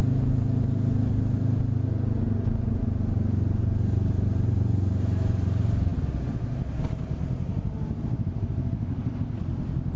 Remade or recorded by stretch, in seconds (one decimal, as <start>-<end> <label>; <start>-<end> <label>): 0.0-10.0 recorded